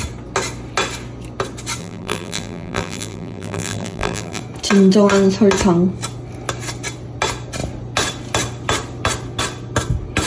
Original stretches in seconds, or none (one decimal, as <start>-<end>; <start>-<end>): 0.0-1.8; 4.4-10.3